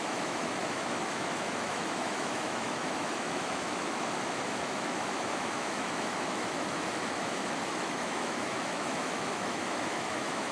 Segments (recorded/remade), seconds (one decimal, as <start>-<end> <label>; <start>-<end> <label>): 0.0-10.5 remade